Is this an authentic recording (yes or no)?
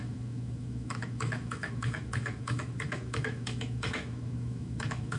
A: no